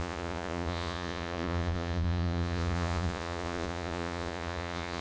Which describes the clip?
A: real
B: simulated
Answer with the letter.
B